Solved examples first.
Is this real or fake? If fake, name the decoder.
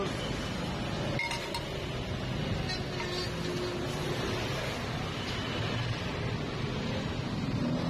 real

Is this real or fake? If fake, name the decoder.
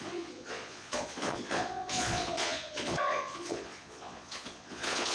fake, vocoder, Vocos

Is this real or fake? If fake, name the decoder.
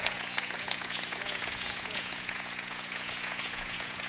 fake, vocoder, Vocos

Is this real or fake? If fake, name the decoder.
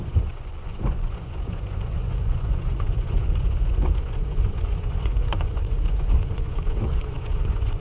fake, vocoder, Vocos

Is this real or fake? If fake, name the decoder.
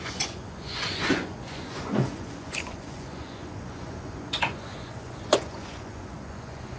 fake, vocoder, Vocos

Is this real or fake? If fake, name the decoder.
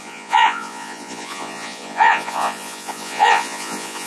fake, vocoder, Vocos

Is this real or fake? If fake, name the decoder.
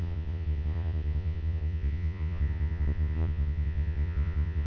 fake, vocoder, Vocos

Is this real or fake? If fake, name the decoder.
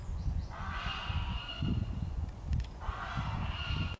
fake, vocoder, Vocos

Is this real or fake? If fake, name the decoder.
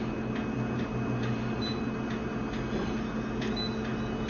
real